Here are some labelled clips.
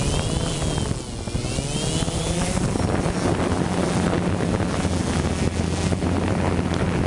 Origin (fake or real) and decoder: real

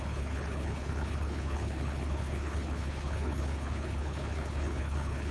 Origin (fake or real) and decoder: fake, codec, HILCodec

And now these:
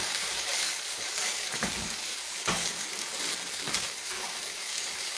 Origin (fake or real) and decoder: fake, codec, DAC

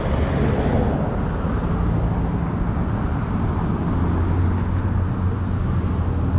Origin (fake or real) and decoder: real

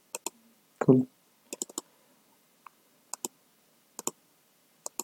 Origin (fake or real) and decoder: real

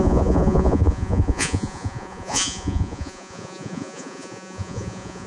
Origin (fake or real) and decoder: fake, vocoder, Vocos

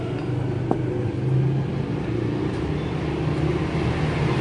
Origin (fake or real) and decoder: real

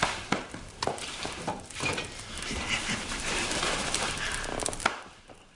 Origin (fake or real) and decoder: real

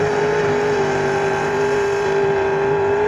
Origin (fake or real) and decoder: fake, vocoder, BigVGAN v2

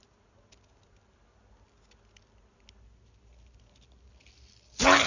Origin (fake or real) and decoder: real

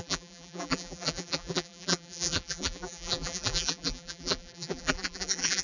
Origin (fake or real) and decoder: fake, vocoder, BigVGAN v2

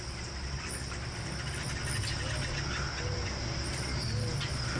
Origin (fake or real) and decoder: real